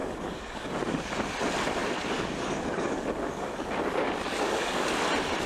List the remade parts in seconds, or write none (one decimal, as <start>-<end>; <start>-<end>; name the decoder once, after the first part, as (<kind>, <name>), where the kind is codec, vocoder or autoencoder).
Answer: 0.0-1.3 (codec, DAC); 1.8-5.1